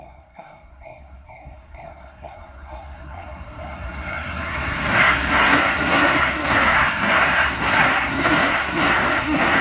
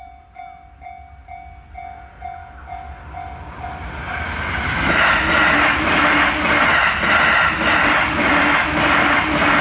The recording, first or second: second